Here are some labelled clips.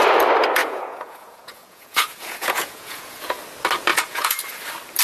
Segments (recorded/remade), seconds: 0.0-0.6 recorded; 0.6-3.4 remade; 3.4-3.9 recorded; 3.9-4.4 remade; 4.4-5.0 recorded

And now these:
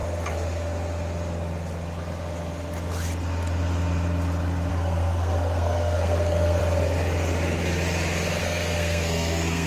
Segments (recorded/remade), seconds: 0.0-4.7 recorded; 4.7-6.6 remade; 6.6-8.4 recorded; 8.4-9.7 remade

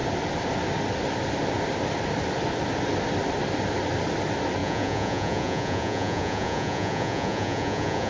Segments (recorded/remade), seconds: 0.0-4.6 recorded; 4.6-8.1 remade

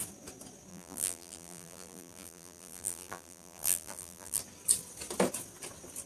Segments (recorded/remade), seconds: 0.0-0.7 recorded; 0.7-4.4 remade; 4.4-6.1 recorded